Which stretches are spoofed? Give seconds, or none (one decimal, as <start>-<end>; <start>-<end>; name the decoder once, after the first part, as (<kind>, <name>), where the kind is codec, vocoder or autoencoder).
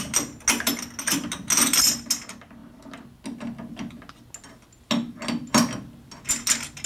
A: none